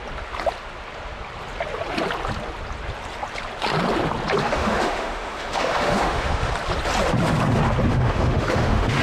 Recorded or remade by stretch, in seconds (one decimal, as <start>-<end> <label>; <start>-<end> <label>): 0.0-4.4 recorded; 4.4-6.5 remade; 6.5-7.9 recorded; 7.9-9.0 remade

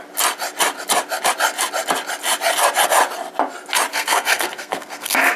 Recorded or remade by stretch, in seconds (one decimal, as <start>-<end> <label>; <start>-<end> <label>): 0.0-3.9 recorded; 3.9-5.4 remade

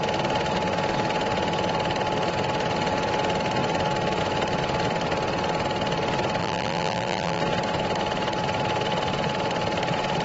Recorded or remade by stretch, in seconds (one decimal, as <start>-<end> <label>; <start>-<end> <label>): 0.0-6.4 recorded; 6.4-7.4 remade; 7.4-10.2 recorded

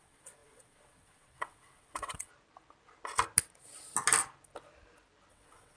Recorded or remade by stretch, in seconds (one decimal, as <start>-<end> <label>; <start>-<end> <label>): 0.0-2.3 remade; 2.3-5.3 recorded; 5.3-5.8 remade

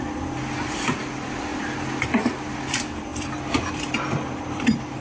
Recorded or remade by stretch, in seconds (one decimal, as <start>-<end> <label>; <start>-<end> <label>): 0.0-1.5 remade; 1.5-2.7 recorded; 2.7-3.1 remade; 3.1-3.7 recorded; 3.7-5.0 remade

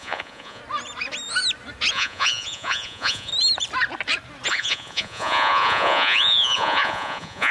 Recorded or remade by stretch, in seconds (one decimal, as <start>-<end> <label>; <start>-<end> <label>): 0.0-0.6 remade; 0.6-1.9 recorded; 1.9-3.3 remade; 3.3-4.5 recorded; 4.5-7.5 remade

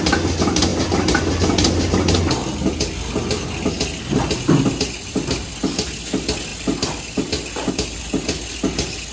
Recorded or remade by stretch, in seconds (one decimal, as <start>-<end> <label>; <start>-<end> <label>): 0.0-9.1 recorded